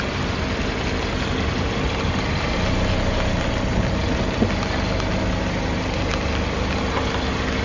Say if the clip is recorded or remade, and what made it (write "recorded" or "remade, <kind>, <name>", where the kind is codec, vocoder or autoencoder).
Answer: recorded